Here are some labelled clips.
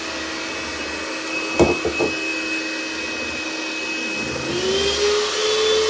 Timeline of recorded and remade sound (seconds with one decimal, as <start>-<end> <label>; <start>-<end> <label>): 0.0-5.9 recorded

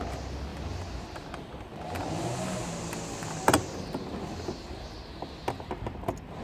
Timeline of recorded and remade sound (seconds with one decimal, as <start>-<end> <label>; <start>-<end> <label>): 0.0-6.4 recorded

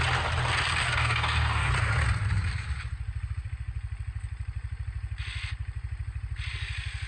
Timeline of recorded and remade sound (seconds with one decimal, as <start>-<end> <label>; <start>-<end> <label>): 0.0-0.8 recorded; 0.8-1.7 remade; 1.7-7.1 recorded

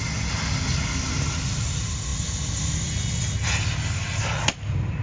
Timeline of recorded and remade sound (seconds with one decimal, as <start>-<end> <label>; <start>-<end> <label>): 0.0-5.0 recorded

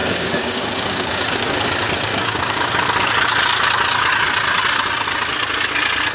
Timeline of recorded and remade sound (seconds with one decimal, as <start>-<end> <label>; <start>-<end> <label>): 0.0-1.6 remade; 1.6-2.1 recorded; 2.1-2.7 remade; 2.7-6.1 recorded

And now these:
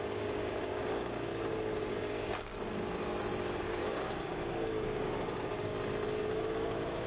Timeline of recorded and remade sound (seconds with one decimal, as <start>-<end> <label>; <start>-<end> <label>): 0.0-1.3 remade; 1.3-1.9 recorded; 1.9-2.5 remade; 2.5-3.6 recorded; 3.6-5.7 remade; 5.7-6.3 recorded; 6.3-7.1 remade

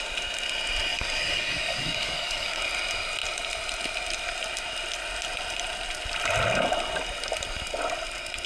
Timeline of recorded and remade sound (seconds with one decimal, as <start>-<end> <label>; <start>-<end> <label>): 0.0-0.9 recorded; 0.9-2.6 remade; 2.6-8.5 recorded

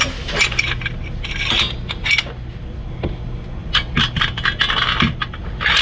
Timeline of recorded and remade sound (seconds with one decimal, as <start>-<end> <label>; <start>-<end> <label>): 0.0-5.8 recorded